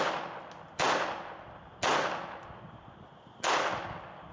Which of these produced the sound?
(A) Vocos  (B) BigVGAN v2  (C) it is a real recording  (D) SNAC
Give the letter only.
C